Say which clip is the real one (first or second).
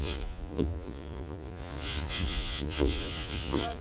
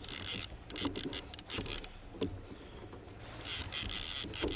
second